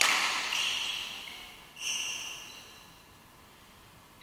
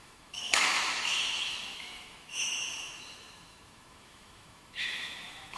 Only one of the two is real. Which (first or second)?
first